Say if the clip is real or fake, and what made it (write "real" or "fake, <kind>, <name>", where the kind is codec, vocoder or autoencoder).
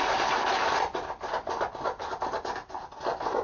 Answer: real